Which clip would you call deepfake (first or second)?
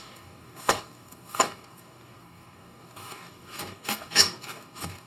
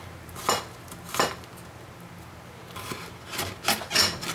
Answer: first